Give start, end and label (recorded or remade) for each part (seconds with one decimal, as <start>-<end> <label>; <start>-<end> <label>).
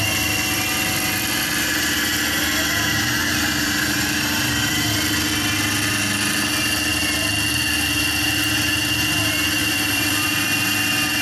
0.0-3.2 recorded; 3.2-4.9 remade; 4.9-9.6 recorded; 9.6-10.5 remade; 10.5-11.2 recorded